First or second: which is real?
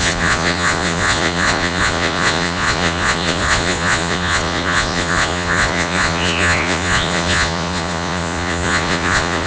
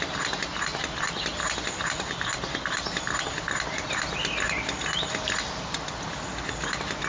second